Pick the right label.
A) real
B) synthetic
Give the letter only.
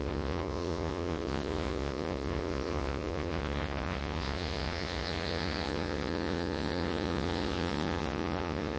B